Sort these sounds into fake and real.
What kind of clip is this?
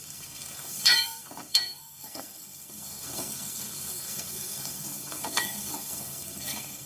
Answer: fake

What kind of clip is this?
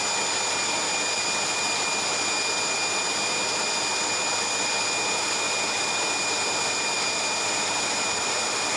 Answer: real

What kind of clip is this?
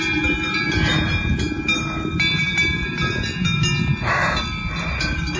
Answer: real